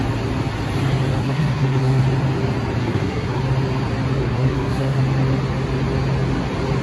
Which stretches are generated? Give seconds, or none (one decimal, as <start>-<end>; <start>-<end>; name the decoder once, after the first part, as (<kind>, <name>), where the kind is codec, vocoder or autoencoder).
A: 1.2-2.0 (codec, SNAC); 2.8-3.4; 4.2-5.0